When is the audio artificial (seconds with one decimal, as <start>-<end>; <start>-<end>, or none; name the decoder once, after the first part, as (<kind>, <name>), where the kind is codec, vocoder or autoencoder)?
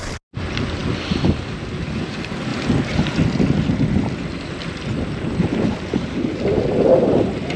none